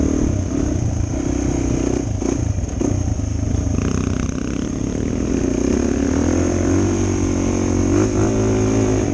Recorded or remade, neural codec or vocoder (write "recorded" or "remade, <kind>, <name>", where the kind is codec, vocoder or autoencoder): recorded